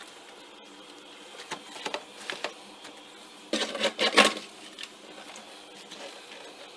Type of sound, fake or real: real